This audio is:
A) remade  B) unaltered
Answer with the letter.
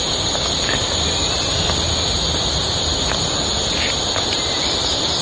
B